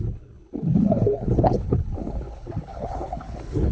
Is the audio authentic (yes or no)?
no